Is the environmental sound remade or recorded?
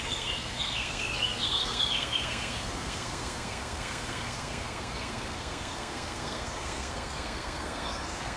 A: remade